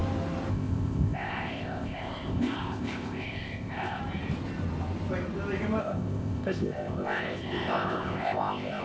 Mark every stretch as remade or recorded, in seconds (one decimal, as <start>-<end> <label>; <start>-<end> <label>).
0.0-0.5 recorded; 0.5-4.0 remade; 4.0-5.8 recorded; 5.8-8.8 remade